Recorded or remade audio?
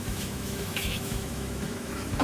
remade